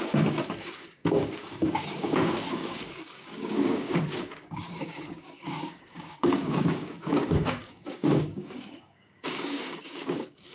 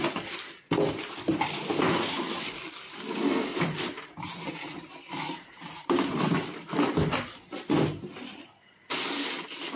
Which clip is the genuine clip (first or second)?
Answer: second